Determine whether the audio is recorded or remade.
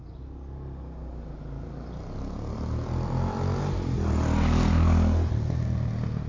recorded